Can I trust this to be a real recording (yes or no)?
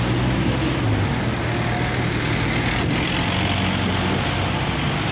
yes